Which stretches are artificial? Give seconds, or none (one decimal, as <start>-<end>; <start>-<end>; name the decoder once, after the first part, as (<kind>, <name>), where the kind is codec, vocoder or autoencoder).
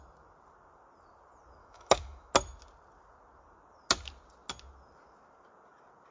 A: 1.6-2.3 (autoencoder, DAC-VAE)